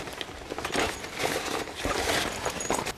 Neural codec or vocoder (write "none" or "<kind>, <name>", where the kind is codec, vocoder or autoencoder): none